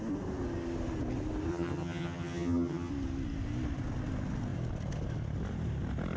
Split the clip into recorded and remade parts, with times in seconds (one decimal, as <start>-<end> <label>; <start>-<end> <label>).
0.0-1.5 recorded; 1.5-2.9 remade; 2.9-6.2 recorded